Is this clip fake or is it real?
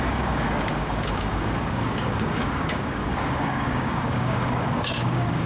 fake